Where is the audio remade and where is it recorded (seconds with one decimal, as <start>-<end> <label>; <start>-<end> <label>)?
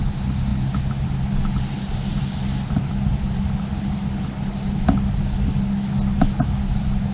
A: 0.0-7.1 recorded